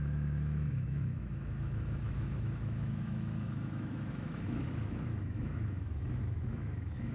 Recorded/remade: remade